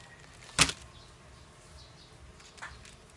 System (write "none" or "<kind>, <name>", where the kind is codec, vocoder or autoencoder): none